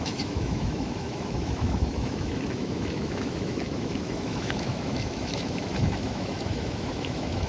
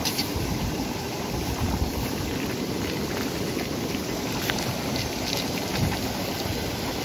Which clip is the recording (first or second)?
second